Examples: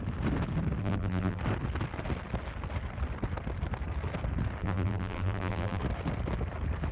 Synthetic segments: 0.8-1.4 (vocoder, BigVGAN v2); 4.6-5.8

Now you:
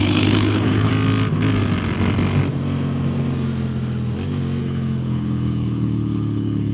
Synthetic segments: 0.0-0.9 (codec, HILCodec); 4.6-6.7

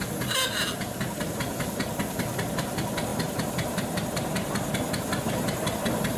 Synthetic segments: none

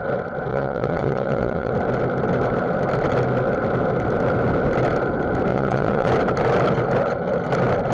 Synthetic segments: 0.5-1.7 (vocoder, WaveNeXt); 5.5-6.1

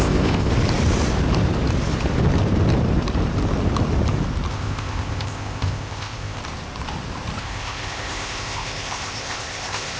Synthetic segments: 0.0-0.5 (codec, ZipCodec); 4.5-6.4; 7.4-10.0

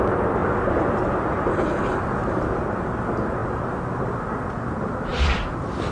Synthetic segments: 1.5-2.0 (codec, HILCodec)

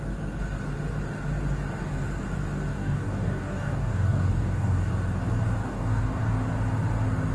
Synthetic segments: 2.7-4.9 (codec, DAC); 5.6-6.2

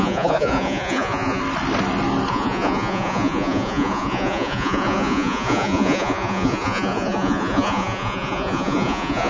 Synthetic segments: 0.0-1.4 (vocoder, Vocos); 2.3-9.3